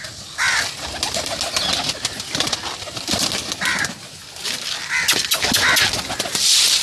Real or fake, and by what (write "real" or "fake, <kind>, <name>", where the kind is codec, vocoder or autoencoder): real